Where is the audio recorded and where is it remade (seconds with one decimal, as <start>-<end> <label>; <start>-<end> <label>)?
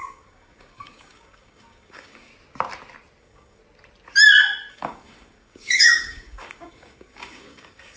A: 0.0-2.3 remade; 2.3-3.2 recorded; 3.2-3.6 remade; 3.6-4.7 recorded; 4.7-8.0 remade